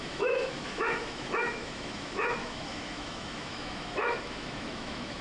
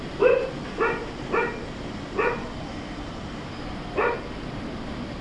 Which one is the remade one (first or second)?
first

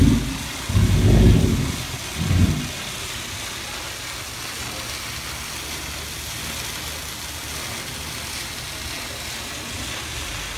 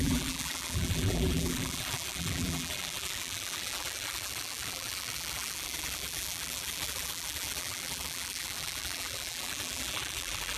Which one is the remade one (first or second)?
second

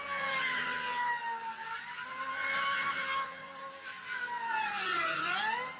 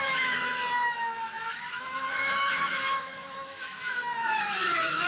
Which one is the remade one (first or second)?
second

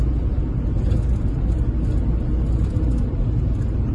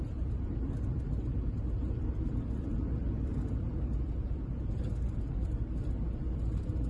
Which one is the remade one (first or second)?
second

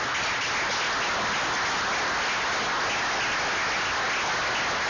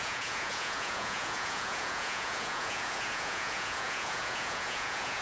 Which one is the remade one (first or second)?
second